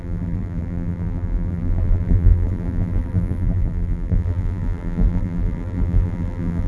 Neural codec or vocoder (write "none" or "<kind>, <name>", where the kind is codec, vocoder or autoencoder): vocoder, BigVGAN v2